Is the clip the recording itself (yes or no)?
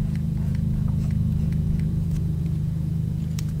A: no